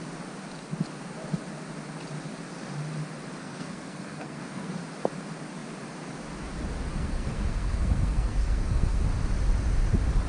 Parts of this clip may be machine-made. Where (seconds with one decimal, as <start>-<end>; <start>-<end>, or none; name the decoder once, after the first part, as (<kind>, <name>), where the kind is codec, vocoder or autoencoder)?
3.4-4.8 (codec, SNAC); 6.9-9.0